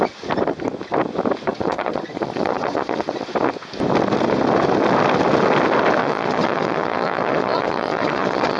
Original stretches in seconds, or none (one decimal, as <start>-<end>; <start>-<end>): 0.0-1.5; 3.3-6.0

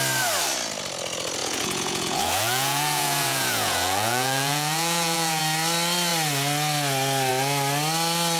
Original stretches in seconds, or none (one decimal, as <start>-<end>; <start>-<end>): 0.0-1.4; 5.4-8.4

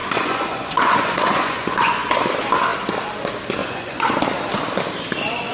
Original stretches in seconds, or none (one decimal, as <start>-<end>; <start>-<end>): 2.0-3.6; 4.1-5.5

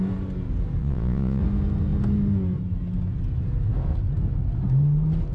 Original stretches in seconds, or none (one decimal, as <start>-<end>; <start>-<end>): 0.0-0.8; 1.4-5.3

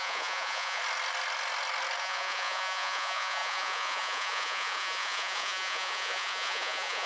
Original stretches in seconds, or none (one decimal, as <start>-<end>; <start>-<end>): 0.8-2.0

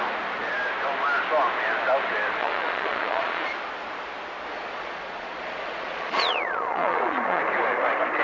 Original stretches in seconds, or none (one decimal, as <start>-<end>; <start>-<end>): 0.0-2.4; 3.5-4.5; 7.4-8.2